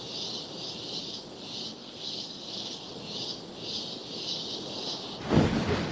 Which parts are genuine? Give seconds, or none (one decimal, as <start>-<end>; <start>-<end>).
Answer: 0.0-1.7; 2.9-5.9